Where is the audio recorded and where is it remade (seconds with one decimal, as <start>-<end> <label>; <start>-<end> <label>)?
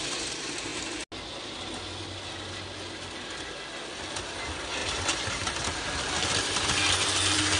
0.0-4.8 recorded; 4.8-5.6 remade; 5.6-7.6 recorded